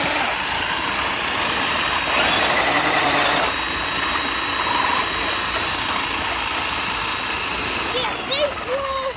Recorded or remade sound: recorded